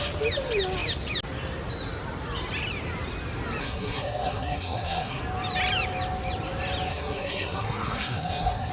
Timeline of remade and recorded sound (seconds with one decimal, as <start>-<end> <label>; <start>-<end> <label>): 0.0-3.6 recorded; 3.6-5.2 remade; 5.2-6.9 recorded; 6.9-8.7 remade